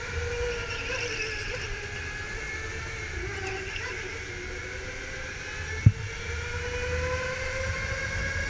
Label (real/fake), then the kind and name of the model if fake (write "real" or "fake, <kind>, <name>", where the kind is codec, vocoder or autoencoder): real